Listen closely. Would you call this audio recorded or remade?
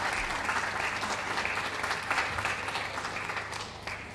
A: recorded